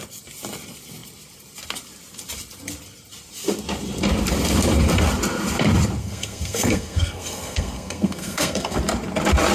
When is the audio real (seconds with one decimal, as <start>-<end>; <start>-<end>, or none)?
0.0-6.0; 8.8-9.5